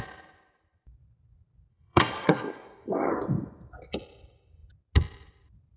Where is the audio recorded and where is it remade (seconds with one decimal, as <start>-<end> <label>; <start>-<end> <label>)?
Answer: 0.0-1.7 recorded; 1.7-3.1 remade; 3.1-5.8 recorded